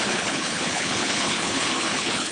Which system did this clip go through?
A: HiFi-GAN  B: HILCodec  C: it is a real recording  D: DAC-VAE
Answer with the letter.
B